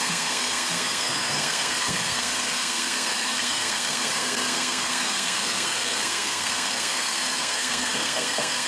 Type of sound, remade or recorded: remade